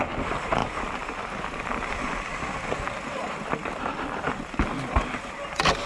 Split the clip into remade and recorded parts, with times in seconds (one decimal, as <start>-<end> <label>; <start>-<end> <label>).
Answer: 0.0-5.9 recorded